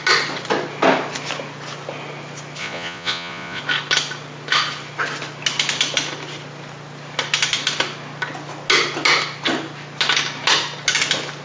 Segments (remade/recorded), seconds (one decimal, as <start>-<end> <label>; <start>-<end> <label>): 0.0-2.6 recorded; 2.6-3.6 remade; 3.6-11.4 recorded